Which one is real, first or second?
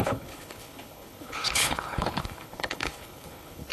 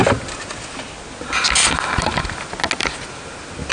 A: second